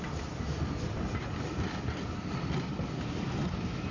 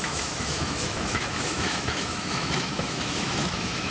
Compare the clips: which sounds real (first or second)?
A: first